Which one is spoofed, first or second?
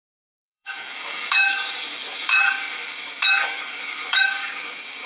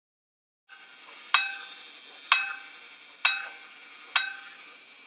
first